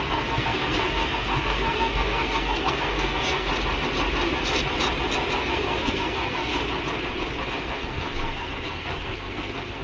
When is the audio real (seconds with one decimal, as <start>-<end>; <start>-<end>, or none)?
3.5-5.4; 6.5-7.5

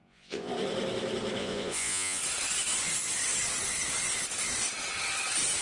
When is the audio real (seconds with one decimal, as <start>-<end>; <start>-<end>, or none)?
0.5-1.4; 2.2-5.6

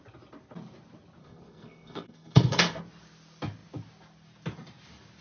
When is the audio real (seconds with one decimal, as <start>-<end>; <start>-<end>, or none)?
0.0-1.2; 2.8-5.2

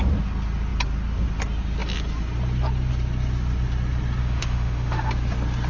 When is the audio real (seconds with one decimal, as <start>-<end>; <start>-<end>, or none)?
0.0-4.2; 5.1-5.7

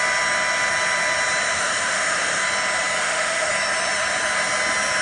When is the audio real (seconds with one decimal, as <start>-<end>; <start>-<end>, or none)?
0.0-1.5; 2.4-3.0; 3.5-5.0

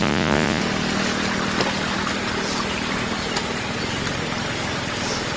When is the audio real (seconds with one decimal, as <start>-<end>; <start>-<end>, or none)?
0.6-5.4

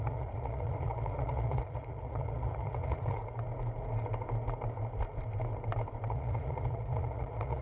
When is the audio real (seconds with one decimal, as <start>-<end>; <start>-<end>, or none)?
3.2-6.1